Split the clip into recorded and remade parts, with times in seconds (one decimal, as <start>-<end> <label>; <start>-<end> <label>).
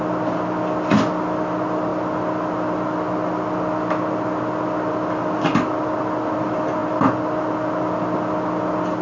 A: 0.0-9.0 recorded